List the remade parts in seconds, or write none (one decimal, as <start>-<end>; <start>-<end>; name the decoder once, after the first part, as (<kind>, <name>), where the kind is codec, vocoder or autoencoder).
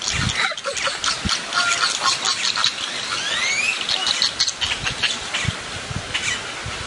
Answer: none